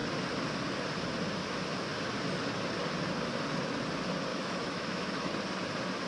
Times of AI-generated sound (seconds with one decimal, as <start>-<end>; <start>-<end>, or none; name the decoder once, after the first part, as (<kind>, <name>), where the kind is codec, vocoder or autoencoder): 4.3-5.3 (autoencoder, DAC-VAE)